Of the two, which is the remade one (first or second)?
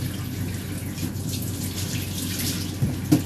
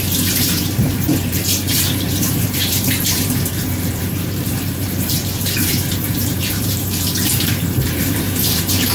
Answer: second